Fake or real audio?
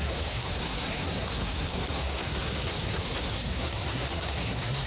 fake